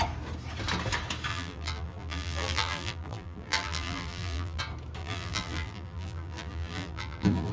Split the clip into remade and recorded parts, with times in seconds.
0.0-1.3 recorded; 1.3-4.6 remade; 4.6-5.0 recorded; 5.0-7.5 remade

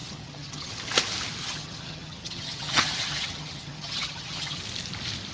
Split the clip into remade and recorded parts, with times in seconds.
0.0-0.7 remade; 0.7-1.4 recorded; 1.4-4.6 remade; 4.6-5.3 recorded

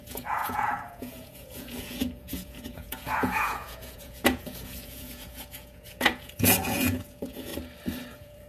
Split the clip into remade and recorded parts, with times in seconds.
0.0-7.5 remade; 7.5-8.1 recorded; 8.1-8.5 remade

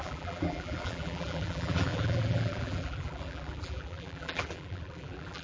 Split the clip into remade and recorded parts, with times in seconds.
0.0-5.4 remade